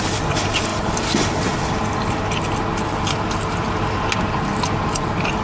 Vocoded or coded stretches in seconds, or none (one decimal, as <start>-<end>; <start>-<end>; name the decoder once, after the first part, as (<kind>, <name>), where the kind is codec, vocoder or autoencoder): none

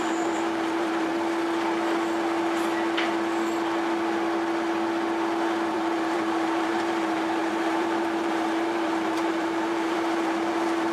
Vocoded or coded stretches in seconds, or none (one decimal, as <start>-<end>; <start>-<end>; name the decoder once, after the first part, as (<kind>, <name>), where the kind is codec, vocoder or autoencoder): 0.0-1.1 (vocoder, BigVGAN v2); 5.7-10.9

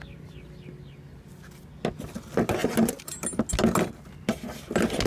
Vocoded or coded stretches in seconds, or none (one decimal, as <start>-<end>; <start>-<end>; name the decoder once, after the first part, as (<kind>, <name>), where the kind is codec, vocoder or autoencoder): none

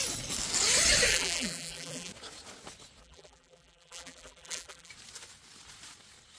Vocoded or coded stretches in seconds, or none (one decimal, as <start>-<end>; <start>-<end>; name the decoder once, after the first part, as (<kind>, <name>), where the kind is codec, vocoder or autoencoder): 1.1-2.1 (vocoder, BigVGAN v2); 3.0-4.9

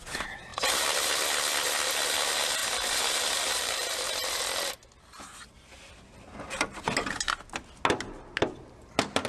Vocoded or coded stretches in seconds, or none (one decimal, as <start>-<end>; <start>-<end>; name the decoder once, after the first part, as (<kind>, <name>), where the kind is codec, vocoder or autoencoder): 0.5-1.1 (vocoder, BigVGAN v2); 2.6-4.4

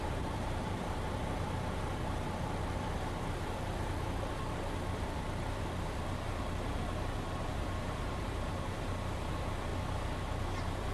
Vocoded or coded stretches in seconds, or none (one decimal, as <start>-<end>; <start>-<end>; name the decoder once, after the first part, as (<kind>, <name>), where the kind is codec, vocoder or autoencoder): 0.0-9.7 (vocoder, BigVGAN v2); 10.4-10.9

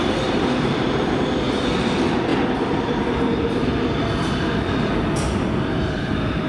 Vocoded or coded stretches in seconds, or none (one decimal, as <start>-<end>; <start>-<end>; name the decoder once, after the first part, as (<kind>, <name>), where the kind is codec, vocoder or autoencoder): none

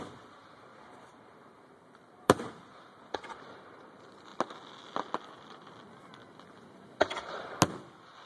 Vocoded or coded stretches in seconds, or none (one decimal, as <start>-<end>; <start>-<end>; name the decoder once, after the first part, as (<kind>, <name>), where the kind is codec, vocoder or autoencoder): 0.4-3.0 (vocoder, BigVGAN v2)